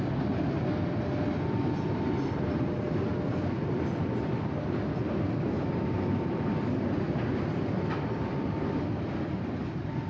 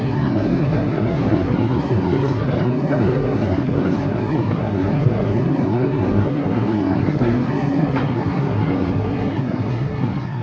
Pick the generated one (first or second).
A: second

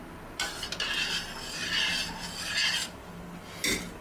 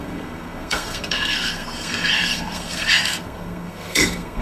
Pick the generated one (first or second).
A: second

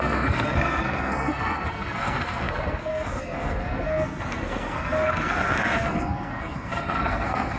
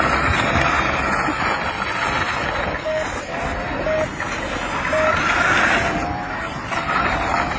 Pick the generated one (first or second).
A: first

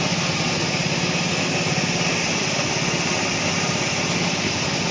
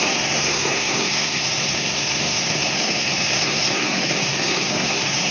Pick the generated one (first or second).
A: second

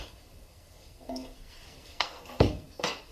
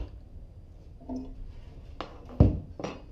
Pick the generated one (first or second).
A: first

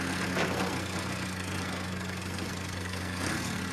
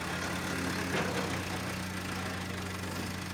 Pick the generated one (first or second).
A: first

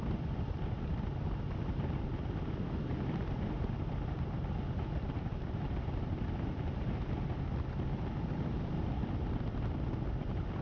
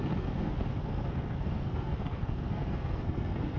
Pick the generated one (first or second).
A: second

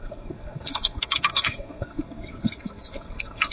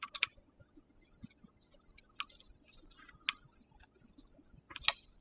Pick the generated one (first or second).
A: first